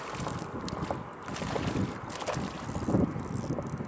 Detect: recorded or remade recorded